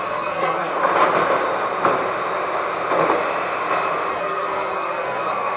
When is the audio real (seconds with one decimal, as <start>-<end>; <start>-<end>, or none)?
0.7-4.1